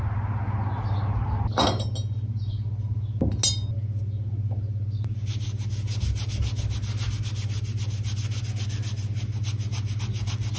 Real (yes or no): yes